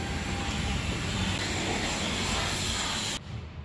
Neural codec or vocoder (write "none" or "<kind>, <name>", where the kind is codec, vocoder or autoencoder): none